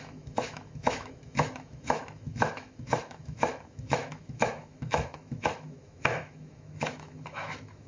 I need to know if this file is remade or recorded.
remade